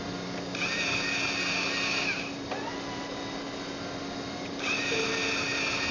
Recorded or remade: recorded